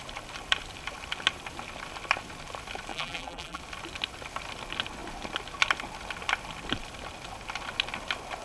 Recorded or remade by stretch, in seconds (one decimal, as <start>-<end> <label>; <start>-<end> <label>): 0.0-2.9 recorded; 2.9-3.6 remade; 3.6-8.4 recorded